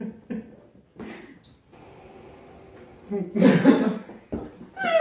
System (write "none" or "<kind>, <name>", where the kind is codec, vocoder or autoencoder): none